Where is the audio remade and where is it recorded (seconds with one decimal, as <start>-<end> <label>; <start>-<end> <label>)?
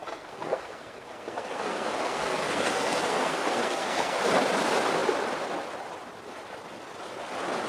0.0-4.2 remade; 4.2-7.7 recorded